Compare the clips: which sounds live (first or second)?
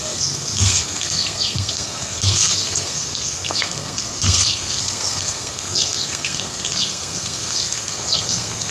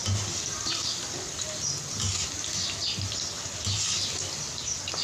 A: second